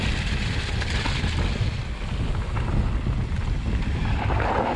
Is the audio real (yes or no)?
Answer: yes